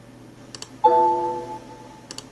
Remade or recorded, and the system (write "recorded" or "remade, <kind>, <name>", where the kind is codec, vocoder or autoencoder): recorded